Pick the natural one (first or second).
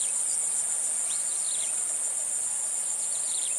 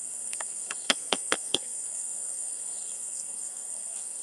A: first